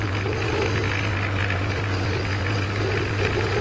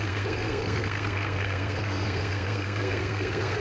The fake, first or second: second